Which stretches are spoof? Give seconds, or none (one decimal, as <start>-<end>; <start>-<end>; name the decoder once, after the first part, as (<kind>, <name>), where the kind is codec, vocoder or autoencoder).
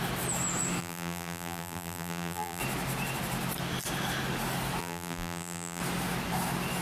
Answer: 0.8-2.6 (vocoder, BigVGAN v2); 4.8-5.8